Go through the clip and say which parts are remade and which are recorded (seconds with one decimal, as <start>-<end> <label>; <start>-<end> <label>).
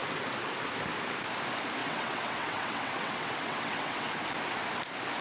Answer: 0.0-1.8 recorded; 1.8-4.2 remade; 4.2-5.2 recorded